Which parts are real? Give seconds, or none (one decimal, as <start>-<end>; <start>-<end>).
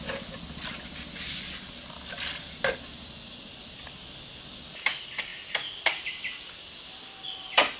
0.0-7.8